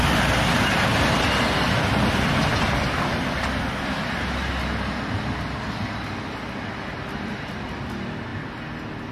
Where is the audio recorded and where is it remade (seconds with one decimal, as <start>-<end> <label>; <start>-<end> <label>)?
0.0-9.1 recorded